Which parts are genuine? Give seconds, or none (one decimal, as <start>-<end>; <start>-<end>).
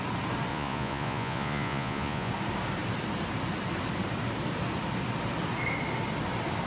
0.0-0.5; 2.3-6.7